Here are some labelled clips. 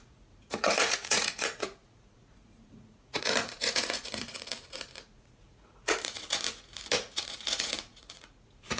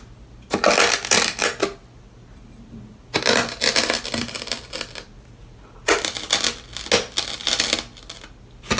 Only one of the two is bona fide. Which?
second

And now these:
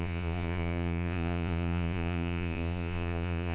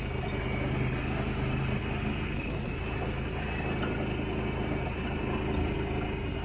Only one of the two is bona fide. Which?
second